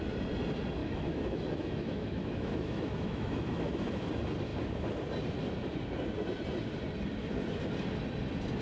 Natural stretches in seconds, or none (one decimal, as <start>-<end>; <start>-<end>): 0.0-0.8; 4.1-8.6